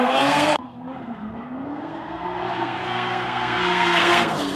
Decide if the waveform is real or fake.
fake